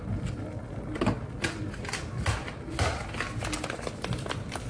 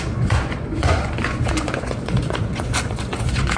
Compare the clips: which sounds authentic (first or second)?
first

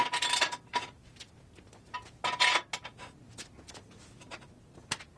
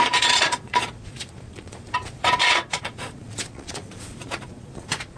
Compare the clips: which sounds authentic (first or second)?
first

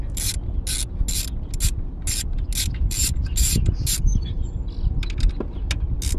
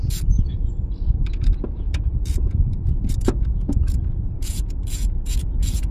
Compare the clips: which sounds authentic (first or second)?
first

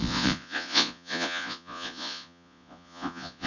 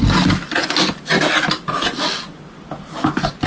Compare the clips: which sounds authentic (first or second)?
second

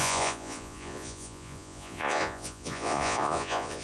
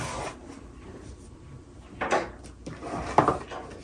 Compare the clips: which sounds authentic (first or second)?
second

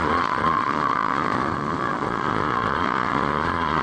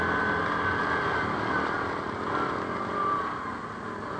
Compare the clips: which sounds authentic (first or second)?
second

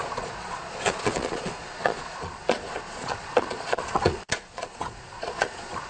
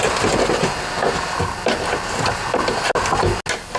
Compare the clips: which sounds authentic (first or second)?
second